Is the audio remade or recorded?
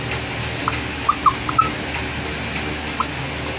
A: recorded